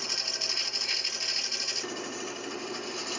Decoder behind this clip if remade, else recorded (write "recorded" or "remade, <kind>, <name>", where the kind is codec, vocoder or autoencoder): recorded